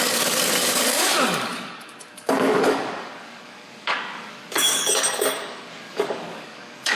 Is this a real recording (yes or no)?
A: no